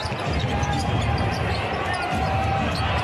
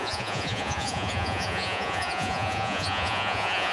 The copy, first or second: second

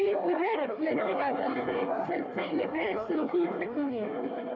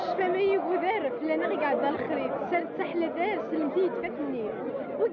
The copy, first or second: first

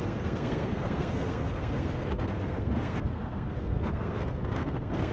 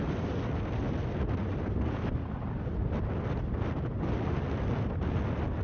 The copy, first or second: first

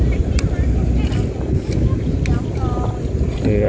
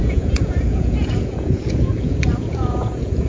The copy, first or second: second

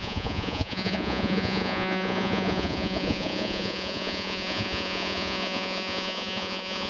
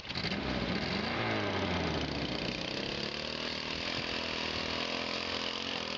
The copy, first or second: first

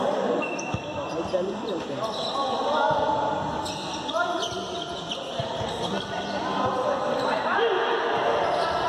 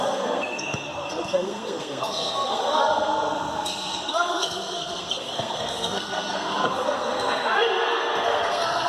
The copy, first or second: second